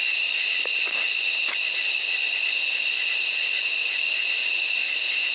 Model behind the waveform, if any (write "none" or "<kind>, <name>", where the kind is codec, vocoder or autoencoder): none